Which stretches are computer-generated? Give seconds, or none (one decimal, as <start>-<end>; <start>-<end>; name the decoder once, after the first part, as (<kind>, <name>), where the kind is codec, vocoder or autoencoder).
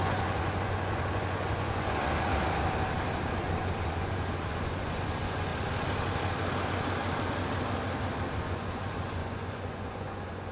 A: 0.0-2.3 (vocoder, Vocos); 3.3-5.5; 8.4-10.5